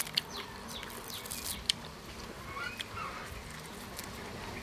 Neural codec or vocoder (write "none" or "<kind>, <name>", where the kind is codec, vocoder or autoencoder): none